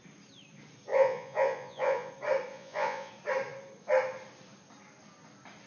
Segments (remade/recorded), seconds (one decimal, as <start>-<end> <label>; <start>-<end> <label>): 0.0-0.9 recorded; 0.9-2.1 remade; 2.1-2.5 recorded; 2.5-3.1 remade; 3.1-5.7 recorded